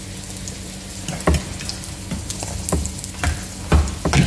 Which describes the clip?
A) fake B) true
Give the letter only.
B